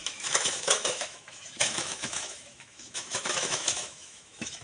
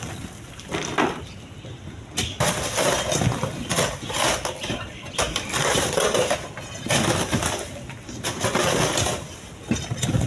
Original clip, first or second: second